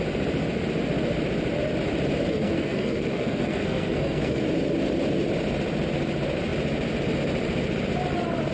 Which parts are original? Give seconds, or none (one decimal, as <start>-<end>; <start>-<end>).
0.0-2.3; 4.4-8.5